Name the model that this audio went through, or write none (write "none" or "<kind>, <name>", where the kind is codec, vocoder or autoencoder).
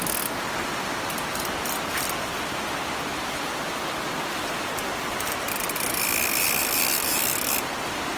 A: none